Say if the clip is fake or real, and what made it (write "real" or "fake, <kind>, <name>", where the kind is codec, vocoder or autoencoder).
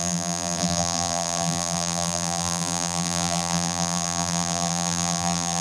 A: fake, vocoder, BigVGAN v2